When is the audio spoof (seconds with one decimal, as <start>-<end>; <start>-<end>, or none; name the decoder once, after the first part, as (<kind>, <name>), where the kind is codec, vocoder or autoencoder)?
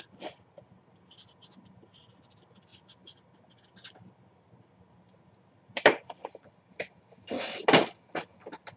none